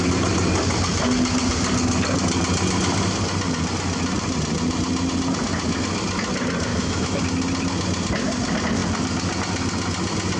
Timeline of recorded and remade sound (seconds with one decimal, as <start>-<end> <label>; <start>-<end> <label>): 0.0-6.7 recorded; 6.7-7.2 remade; 7.2-10.4 recorded